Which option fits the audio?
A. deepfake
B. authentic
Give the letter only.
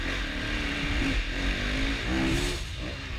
B